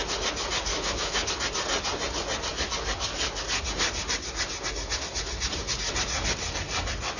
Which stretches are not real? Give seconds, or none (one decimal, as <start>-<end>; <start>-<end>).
0.7-1.3